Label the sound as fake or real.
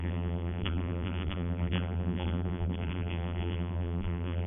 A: fake